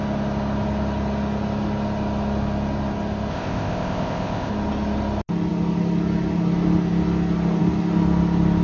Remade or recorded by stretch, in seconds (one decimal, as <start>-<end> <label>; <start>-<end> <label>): 0.0-3.3 recorded; 3.3-4.5 remade; 4.5-8.6 recorded